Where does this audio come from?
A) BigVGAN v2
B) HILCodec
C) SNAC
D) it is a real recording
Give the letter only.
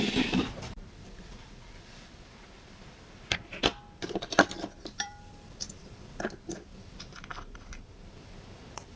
A